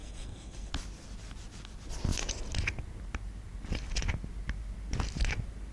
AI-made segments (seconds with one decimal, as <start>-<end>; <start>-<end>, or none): 0.0-0.7